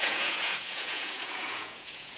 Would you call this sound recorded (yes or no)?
no